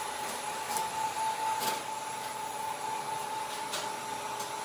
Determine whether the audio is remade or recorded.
recorded